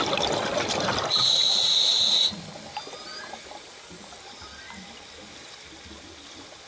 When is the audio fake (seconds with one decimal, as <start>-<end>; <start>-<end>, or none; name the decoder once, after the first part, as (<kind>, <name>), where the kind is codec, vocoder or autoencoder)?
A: none